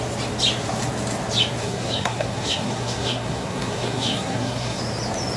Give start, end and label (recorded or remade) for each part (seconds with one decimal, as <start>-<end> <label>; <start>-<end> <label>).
0.0-1.6 recorded; 1.6-4.8 remade; 4.8-5.4 recorded